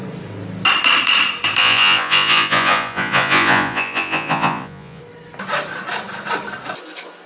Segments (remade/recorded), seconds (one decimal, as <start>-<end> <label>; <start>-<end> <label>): 0.0-1.6 recorded; 1.6-5.0 remade; 5.0-7.3 recorded

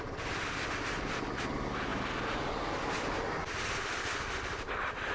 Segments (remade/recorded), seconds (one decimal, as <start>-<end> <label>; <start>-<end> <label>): 0.0-5.1 recorded

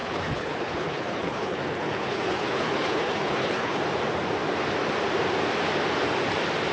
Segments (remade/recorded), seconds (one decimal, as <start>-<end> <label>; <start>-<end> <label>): 0.0-3.8 remade; 3.8-6.7 recorded

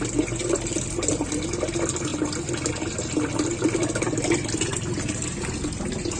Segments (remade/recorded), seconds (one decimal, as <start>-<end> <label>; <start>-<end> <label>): 0.0-6.2 recorded

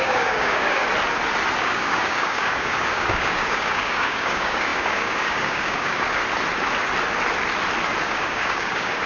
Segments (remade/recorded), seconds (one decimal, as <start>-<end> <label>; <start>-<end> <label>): 0.0-0.9 remade; 0.9-1.6 recorded; 1.6-6.2 remade; 6.2-8.0 recorded; 8.0-9.1 remade

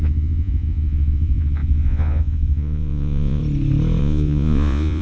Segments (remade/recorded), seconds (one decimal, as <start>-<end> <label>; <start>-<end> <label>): 0.0-3.4 remade; 3.4-4.0 recorded; 4.0-5.0 remade

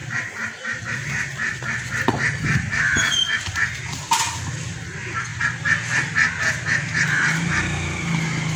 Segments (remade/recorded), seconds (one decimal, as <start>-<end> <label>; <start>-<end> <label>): 0.0-8.6 recorded